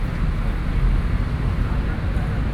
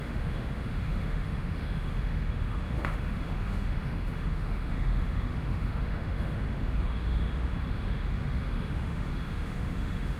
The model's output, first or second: second